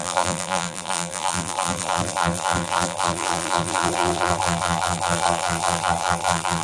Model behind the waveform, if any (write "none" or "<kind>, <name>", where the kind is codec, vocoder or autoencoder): vocoder, BigVGAN v2